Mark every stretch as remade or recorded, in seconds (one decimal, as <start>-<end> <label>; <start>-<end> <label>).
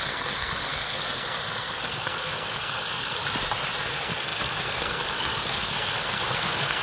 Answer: 0.0-3.2 remade; 3.2-3.8 recorded; 3.8-6.8 remade